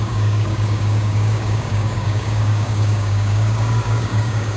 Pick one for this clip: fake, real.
fake